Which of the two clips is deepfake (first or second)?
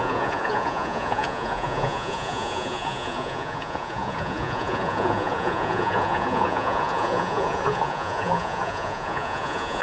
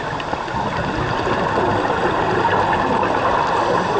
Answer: first